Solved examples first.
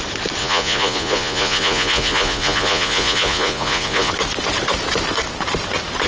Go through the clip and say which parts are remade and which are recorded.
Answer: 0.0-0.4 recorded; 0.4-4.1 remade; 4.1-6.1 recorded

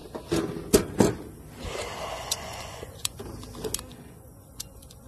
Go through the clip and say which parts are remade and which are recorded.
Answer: 0.0-2.1 recorded; 2.1-3.2 remade; 3.2-3.9 recorded; 3.9-5.1 remade

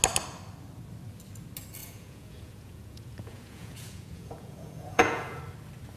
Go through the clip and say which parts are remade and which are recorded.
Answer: 0.0-1.8 recorded; 1.8-5.4 remade; 5.4-6.0 recorded

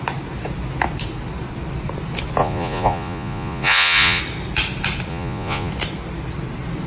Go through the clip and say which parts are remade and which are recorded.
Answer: 0.0-2.4 recorded; 2.4-4.2 remade; 4.2-5.1 recorded; 5.1-5.7 remade; 5.7-6.9 recorded

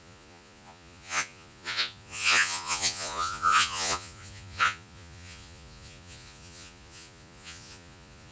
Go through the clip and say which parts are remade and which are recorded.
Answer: 0.0-8.3 remade

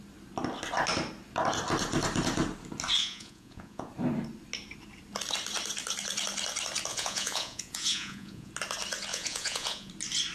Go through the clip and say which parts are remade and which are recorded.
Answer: 0.0-3.0 recorded; 3.0-3.9 remade; 3.9-6.9 recorded; 6.9-8.5 remade; 8.5-9.1 recorded; 9.1-9.9 remade; 9.9-10.3 recorded

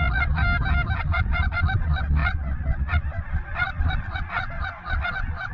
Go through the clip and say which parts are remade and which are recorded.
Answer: 0.0-0.4 remade; 0.4-1.0 recorded; 1.0-5.5 remade

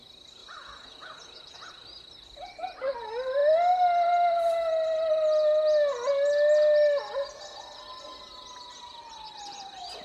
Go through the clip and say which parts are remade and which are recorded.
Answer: 0.0-0.4 recorded; 0.4-1.7 remade; 1.7-10.0 recorded